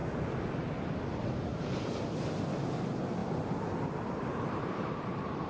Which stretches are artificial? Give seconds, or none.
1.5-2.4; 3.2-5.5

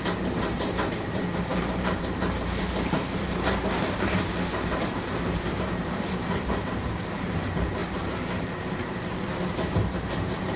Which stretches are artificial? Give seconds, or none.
0.0-10.6

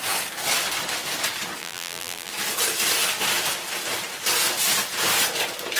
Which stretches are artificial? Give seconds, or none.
1.6-2.3

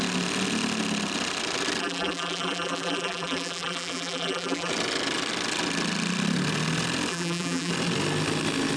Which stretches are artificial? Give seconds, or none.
1.8-4.7; 7.1-7.7

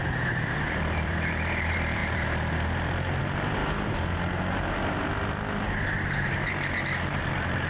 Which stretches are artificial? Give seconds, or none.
0.0-3.6; 7.2-7.7

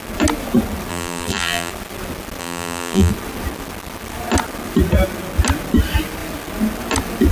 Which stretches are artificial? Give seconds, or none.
0.9-1.7; 2.4-3.1

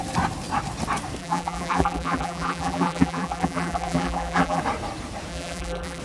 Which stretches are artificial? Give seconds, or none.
1.2-4.6; 5.3-6.0